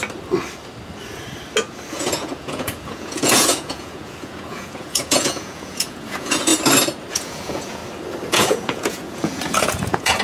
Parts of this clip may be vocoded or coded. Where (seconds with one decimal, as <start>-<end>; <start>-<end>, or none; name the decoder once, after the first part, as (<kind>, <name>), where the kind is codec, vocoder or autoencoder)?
1.9-6.5 (vocoder, Vocos); 7.1-7.8; 8.3-10.2